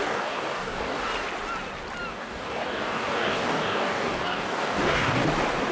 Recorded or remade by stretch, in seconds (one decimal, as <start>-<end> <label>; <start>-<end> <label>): 0.0-1.0 remade; 1.0-2.1 recorded; 2.1-5.2 remade; 5.2-5.7 recorded